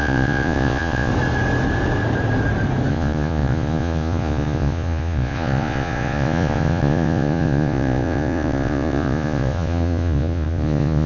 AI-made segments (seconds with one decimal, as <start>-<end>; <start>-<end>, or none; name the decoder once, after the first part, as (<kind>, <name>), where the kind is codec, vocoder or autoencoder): 0.0-1.1 (vocoder, Vocos); 2.9-11.1